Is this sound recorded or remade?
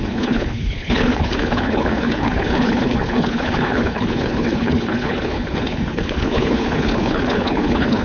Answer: remade